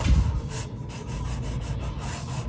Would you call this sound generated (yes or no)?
no